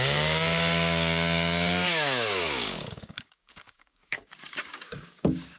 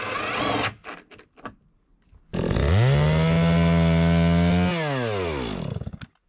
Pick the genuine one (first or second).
second